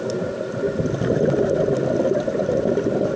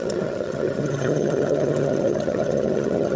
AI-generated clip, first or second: second